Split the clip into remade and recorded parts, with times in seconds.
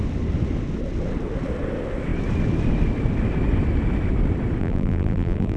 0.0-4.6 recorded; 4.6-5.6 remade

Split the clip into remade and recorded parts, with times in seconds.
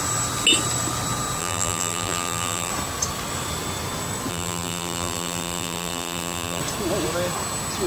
0.0-1.4 recorded; 1.4-2.7 remade; 2.7-4.3 recorded; 4.3-6.6 remade; 6.6-7.9 recorded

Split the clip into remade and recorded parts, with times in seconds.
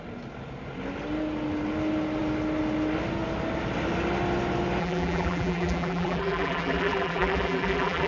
0.0-4.8 recorded; 4.8-8.1 remade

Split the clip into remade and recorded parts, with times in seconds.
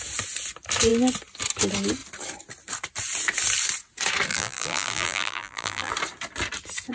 0.0-4.3 recorded; 4.3-5.9 remade; 5.9-6.9 recorded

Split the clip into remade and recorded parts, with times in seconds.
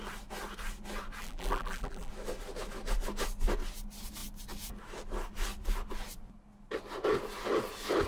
0.0-1.2 recorded; 1.2-2.1 remade; 2.1-8.1 recorded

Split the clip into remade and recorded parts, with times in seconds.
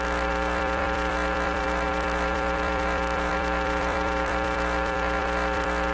0.0-5.9 remade